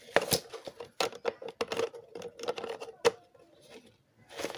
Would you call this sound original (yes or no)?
yes